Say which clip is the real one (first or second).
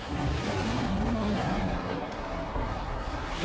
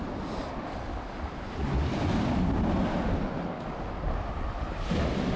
second